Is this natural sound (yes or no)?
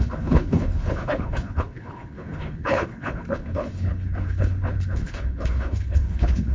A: no